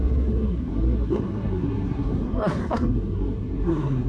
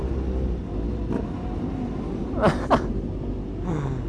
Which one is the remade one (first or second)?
first